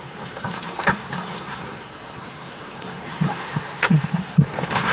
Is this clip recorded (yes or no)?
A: no